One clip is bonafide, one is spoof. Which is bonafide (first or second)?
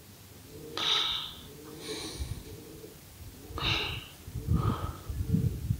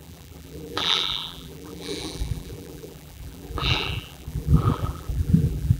first